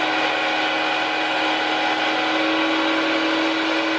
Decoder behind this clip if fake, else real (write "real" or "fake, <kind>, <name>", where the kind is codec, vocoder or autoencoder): real